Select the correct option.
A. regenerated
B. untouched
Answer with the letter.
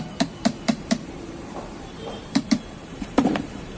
A